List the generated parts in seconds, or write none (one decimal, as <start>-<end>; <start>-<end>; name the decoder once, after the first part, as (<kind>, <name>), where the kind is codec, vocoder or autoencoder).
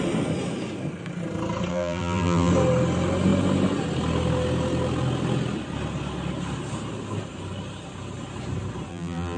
1.7-2.5 (vocoder, BigVGAN v2); 8.9-9.4